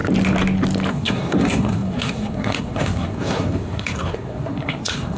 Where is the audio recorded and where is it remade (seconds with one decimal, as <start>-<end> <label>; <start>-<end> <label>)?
0.0-0.9 recorded; 0.9-5.2 remade